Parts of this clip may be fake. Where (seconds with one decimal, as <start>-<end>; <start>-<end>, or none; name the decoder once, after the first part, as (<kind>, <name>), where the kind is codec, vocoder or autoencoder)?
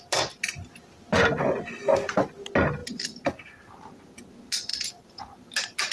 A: 4.7-5.2 (vocoder, BigVGAN v2)